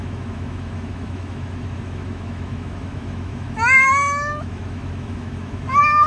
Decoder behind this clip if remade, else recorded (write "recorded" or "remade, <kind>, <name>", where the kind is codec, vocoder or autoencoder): remade, autoencoder, DAC-VAE